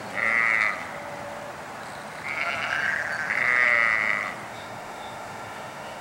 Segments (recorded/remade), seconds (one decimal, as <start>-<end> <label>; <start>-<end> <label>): 0.0-4.5 recorded; 4.5-6.0 remade